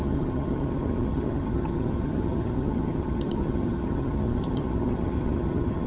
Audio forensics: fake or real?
fake